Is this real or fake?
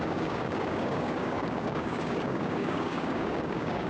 fake